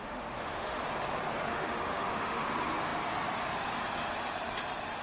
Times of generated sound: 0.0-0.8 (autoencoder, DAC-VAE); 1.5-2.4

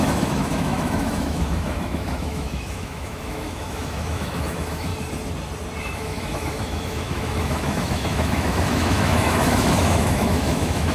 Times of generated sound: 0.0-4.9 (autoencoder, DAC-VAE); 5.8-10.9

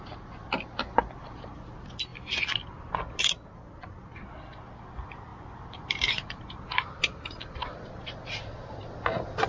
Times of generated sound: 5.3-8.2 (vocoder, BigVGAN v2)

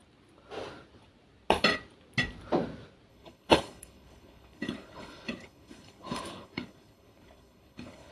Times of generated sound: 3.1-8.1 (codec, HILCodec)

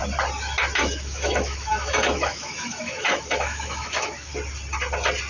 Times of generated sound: 0.8-4.3 (autoencoder, DAC-VAE)

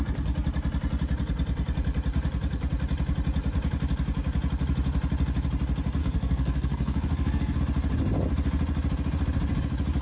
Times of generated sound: 6.0-7.6 (codec, SNAC)

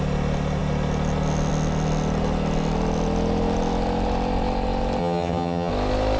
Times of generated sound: 5.0-5.7 (vocoder, HiFi-GAN)

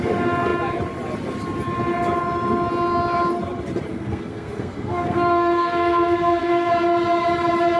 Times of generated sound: 3.9-6.7 (codec, SNAC)